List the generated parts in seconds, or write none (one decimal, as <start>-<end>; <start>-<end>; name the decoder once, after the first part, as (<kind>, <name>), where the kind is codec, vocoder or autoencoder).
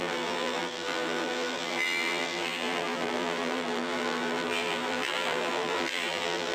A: 0.0-6.5 (vocoder, BigVGAN v2)